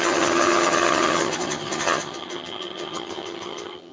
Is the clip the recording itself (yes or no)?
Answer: no